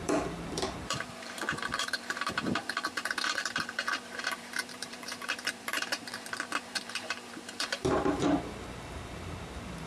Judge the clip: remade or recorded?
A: remade